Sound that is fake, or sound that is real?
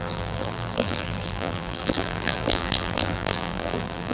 fake